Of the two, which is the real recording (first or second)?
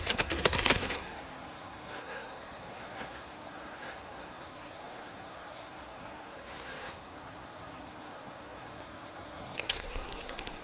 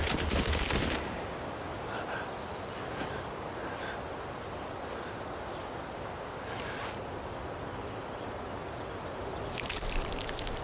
second